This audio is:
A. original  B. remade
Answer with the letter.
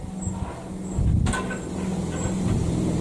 A